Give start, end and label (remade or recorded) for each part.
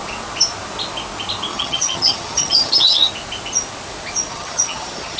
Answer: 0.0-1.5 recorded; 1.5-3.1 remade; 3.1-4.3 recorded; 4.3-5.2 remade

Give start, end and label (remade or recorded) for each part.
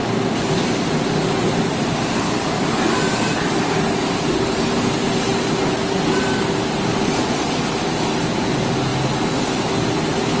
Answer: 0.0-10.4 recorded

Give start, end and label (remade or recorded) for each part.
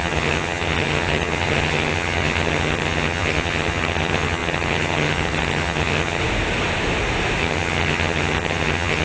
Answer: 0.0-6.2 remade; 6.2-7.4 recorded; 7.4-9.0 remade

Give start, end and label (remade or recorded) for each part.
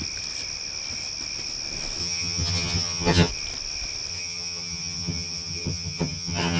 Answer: 0.0-2.0 recorded; 2.0-3.3 remade; 3.3-4.1 recorded; 4.1-6.6 remade